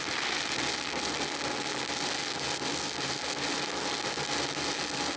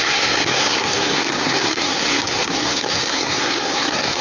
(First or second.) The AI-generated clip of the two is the second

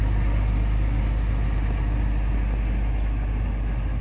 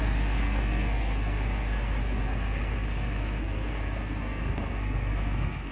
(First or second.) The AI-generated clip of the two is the second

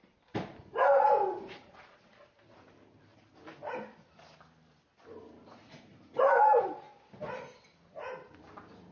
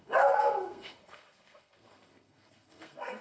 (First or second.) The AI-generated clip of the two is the second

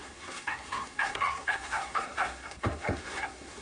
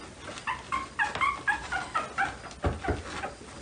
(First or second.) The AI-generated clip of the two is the first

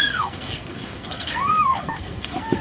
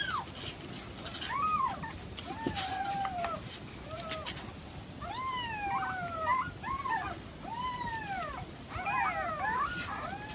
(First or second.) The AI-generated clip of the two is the first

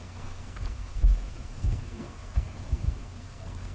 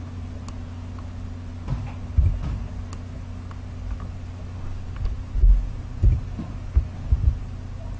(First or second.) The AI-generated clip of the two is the first